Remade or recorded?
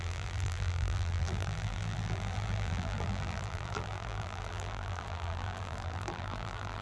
remade